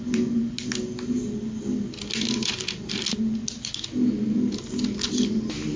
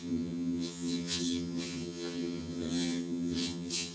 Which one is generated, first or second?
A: second